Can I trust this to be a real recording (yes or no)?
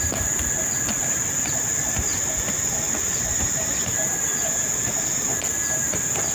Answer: yes